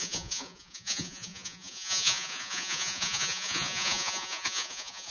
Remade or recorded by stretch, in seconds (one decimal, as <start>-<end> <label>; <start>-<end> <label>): 0.0-5.1 remade